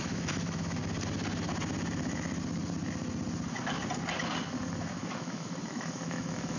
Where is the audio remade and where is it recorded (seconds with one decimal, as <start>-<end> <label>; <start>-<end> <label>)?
0.0-0.8 remade; 0.8-4.8 recorded; 4.8-6.6 remade